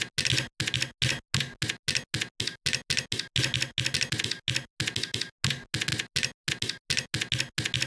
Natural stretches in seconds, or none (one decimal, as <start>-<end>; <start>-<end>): 0.0-7.9